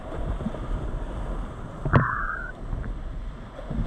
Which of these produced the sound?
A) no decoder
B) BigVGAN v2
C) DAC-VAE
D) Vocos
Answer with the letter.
A